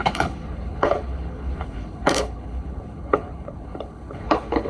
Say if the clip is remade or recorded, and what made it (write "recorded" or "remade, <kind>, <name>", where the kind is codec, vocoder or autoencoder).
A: remade, codec, HILCodec